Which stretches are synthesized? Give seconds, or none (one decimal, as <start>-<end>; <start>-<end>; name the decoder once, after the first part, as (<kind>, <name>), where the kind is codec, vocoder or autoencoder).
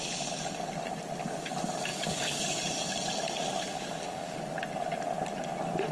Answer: 1.9-3.1 (codec, DAC); 3.7-4.4